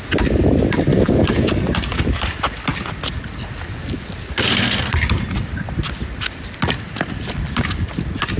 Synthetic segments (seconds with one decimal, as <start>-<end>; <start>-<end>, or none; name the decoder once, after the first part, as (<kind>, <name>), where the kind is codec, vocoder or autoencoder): 0.9-2.2 (codec, DAC)